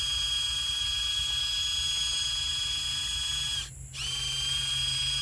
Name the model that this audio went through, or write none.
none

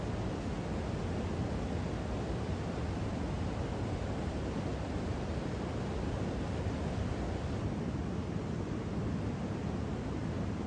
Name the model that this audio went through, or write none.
none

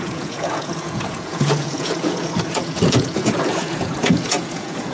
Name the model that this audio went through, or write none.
vocoder, Vocos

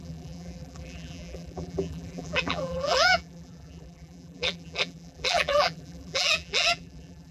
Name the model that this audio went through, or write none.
vocoder, BigVGAN v2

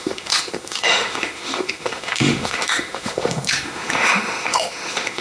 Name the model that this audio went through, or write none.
autoencoder, DAC-VAE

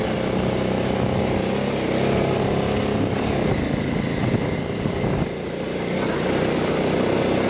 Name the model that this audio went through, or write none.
none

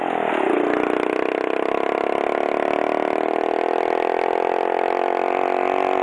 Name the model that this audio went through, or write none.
none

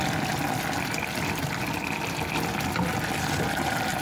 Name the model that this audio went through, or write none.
vocoder, BigVGAN v2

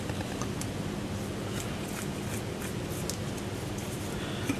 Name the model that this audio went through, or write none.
none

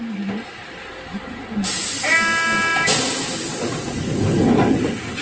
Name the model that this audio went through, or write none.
none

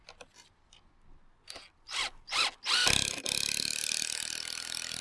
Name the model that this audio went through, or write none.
none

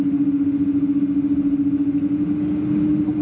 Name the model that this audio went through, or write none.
none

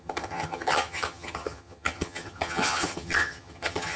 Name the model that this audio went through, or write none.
vocoder, HiFi-GAN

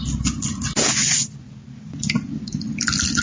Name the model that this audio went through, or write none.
none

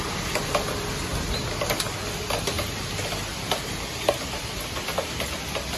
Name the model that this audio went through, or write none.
none